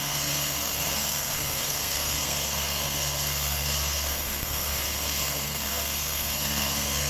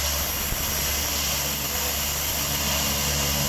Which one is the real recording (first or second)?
second